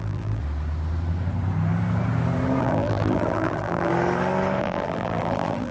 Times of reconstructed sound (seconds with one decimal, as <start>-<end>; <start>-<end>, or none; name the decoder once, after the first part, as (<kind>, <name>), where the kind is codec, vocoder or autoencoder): 0.0-0.4 (vocoder, BigVGAN v2); 2.6-3.9; 4.6-5.7